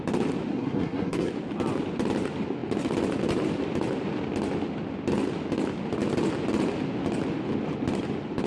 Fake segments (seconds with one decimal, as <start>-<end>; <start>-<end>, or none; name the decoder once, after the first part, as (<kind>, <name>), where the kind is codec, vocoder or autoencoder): 0.5-1.3 (codec, SNAC)